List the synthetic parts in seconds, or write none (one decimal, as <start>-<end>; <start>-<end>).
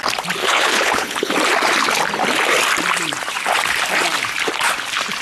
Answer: 0.4-1.3